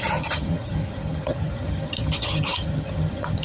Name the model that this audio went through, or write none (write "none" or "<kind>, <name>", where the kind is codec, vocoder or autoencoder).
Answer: vocoder, HiFi-GAN